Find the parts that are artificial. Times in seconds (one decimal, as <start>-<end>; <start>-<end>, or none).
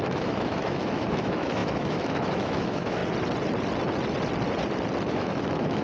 0.0-3.0; 5.1-5.8